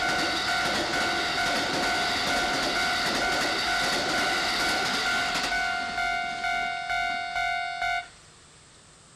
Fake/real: real